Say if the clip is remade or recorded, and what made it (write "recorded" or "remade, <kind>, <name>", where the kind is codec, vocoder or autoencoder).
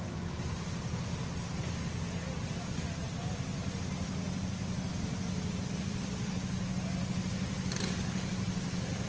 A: recorded